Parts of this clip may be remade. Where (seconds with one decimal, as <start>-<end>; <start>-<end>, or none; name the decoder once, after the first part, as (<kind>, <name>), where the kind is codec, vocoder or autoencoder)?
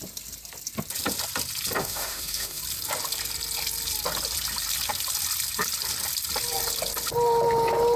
1.8-2.6 (autoencoder, DAC-VAE)